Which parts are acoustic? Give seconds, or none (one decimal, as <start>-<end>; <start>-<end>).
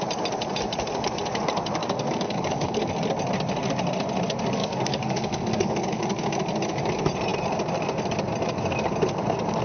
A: 0.0-1.8; 2.9-4.6; 6.0-9.6